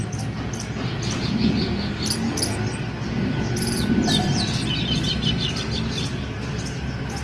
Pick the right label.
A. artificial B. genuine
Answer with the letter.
B